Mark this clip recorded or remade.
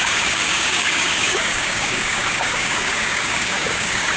remade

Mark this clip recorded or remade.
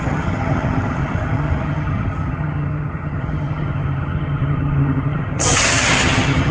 remade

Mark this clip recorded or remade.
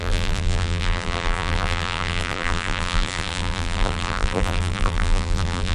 remade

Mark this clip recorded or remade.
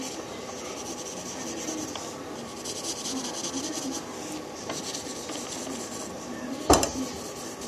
recorded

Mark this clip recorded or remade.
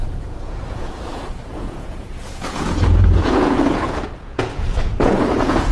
remade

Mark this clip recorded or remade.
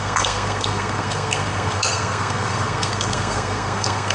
remade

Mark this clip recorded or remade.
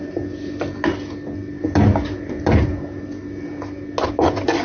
recorded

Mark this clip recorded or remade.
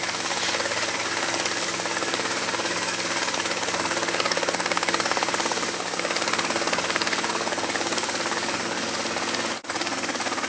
remade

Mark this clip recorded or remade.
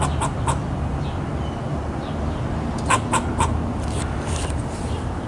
recorded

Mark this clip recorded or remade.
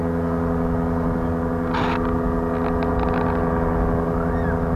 recorded